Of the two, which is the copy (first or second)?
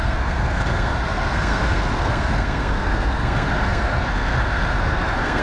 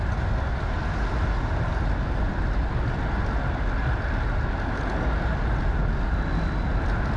first